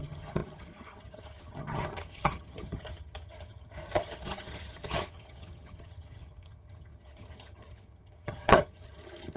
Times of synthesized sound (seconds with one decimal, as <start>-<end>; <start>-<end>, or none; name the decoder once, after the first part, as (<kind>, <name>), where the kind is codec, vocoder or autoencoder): 0.0-9.4 (vocoder, HiFi-GAN)